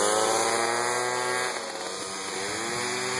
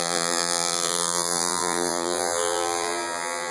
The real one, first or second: first